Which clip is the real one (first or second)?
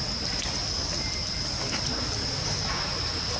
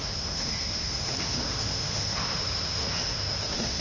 first